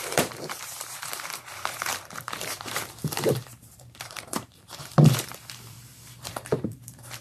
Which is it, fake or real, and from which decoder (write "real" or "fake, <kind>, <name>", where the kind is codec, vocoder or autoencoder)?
fake, vocoder, BigVGAN v2